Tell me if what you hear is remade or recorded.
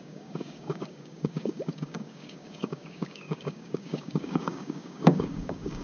remade